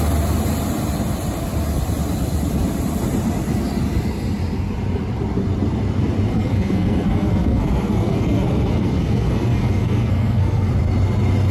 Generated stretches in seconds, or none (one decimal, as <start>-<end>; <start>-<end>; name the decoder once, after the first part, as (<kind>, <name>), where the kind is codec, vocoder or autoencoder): 6.3-10.7 (codec, SNAC)